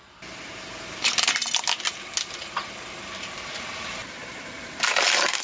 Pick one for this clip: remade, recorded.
recorded